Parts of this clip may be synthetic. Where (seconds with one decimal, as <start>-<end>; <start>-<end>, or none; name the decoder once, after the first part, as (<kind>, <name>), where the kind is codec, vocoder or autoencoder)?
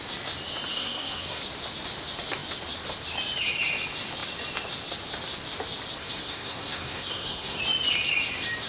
0.7-1.4 (codec, SNAC); 6.0-7.6